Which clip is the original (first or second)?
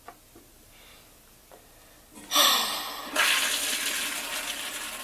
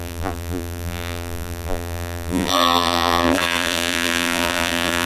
first